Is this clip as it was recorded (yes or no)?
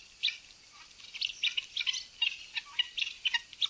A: yes